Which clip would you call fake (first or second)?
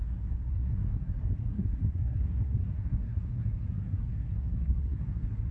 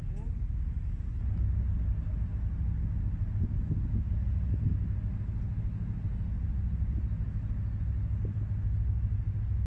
first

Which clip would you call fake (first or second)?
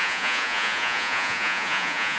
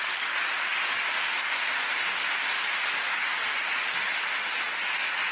first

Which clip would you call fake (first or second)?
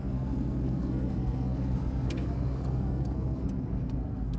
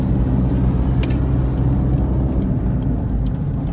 first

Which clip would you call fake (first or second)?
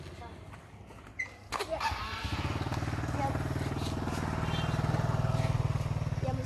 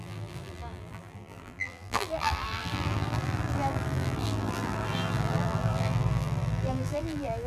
second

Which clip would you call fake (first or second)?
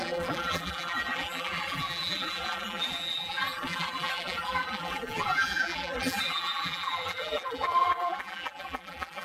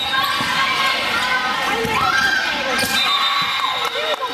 first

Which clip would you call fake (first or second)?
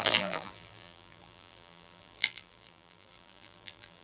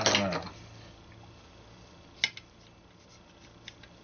first